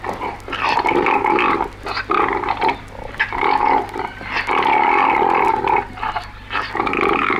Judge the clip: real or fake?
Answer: real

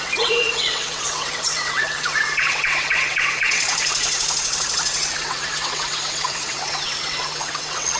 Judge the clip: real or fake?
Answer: fake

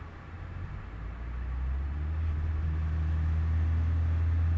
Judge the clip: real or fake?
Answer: real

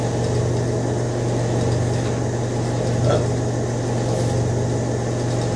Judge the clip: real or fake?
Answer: real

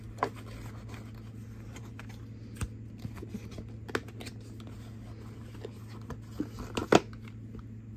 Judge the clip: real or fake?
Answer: real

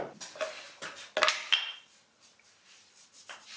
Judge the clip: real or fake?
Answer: real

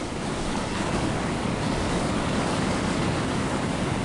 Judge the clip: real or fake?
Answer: fake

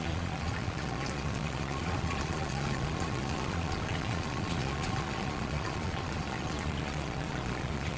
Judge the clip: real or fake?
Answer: fake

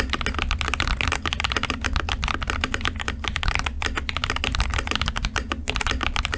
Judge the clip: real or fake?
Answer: real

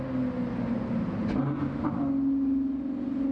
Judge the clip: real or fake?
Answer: real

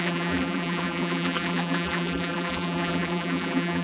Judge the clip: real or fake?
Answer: fake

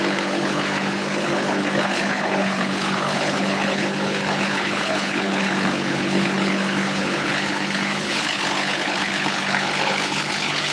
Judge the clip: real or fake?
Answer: fake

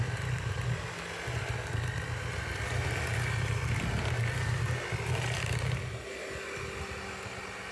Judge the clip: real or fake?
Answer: real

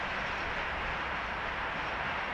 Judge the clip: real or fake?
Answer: real